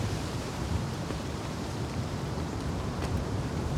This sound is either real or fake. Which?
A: fake